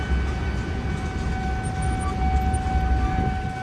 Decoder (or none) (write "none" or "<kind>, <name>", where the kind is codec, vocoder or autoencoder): none